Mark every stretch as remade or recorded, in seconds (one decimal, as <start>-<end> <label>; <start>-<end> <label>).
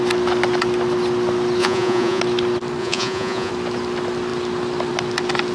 0.0-1.6 recorded; 1.6-2.2 remade; 2.2-2.8 recorded; 2.8-3.5 remade; 3.5-5.5 recorded